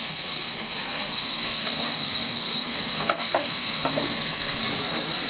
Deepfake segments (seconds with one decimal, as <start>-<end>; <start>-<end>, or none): 0.0-4.6